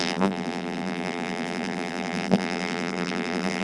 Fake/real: fake